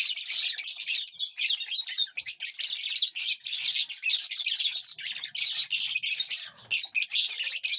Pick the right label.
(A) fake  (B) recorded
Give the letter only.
B